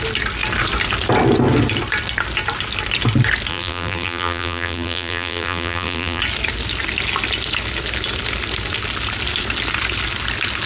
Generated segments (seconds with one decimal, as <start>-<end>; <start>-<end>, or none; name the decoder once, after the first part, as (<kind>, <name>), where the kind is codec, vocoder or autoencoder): 3.5-6.2 (vocoder, BigVGAN v2)